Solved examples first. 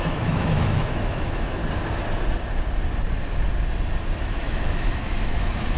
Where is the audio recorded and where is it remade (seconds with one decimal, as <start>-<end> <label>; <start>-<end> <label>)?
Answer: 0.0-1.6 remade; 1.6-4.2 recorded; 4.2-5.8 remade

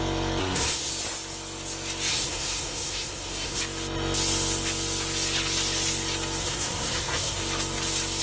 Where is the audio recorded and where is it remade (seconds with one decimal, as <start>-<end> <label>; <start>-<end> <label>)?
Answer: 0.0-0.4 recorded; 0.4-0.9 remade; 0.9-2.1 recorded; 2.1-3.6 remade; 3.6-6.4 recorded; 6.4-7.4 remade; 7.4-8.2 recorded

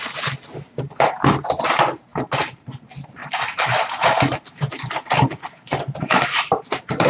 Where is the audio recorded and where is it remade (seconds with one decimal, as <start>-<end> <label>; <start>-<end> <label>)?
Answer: 0.0-2.1 recorded; 2.1-2.8 remade; 2.8-3.2 recorded; 3.2-7.1 remade

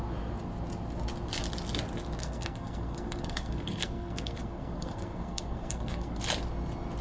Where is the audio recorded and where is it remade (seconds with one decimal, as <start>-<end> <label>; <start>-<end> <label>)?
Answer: 0.0-2.2 recorded; 2.2-6.2 remade; 6.2-7.0 recorded

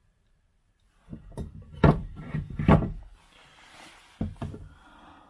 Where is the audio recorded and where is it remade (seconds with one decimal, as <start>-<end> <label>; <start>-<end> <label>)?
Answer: 0.0-3.0 remade; 3.0-5.3 recorded

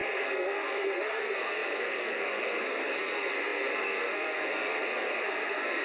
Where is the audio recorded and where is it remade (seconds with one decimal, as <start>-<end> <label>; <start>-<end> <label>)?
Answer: 0.0-5.8 remade